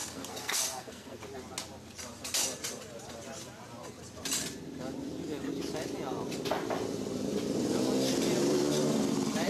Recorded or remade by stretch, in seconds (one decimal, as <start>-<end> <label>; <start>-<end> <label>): 0.0-1.2 remade; 1.2-9.5 recorded